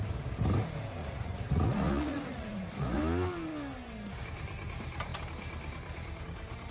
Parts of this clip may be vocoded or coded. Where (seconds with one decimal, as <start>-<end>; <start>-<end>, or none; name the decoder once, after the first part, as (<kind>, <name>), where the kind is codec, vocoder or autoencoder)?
1.0-3.0 (vocoder, Vocos)